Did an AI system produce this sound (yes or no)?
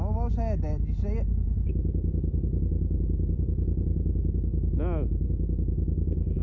no